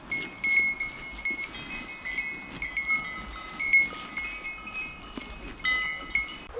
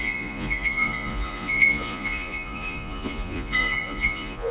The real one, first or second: first